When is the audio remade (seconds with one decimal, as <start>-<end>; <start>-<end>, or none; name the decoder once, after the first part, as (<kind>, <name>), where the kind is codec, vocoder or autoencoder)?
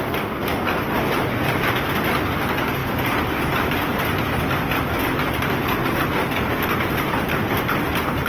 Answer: none